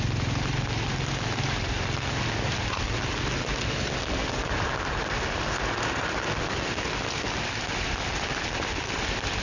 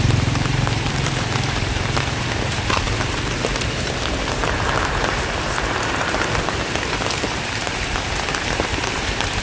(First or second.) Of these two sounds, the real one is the first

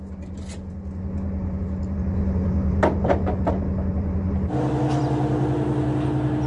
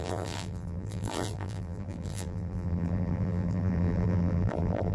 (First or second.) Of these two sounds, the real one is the first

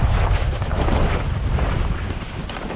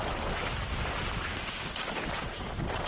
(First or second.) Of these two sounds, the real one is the second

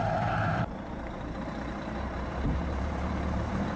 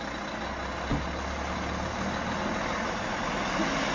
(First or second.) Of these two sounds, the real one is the second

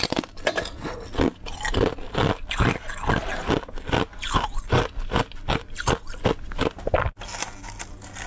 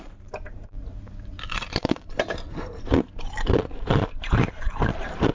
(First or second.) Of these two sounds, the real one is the first